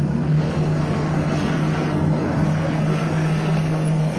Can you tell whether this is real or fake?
fake